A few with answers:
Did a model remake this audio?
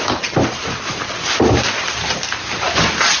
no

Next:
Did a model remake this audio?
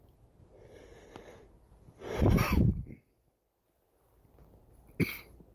no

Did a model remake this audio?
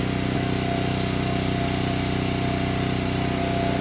no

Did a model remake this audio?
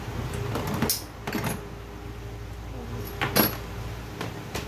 no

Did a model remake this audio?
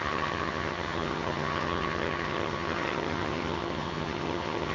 yes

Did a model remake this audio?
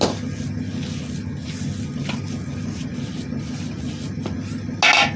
no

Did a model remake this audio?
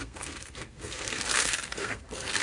yes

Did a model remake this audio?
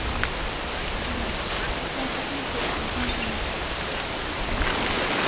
no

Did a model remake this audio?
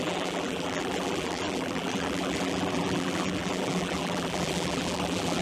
yes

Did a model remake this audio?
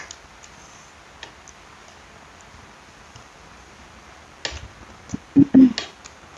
no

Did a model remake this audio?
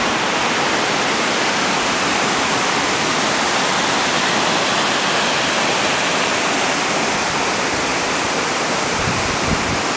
yes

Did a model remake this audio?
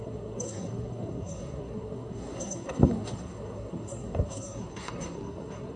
yes